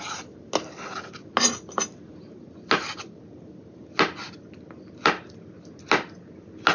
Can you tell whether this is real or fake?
real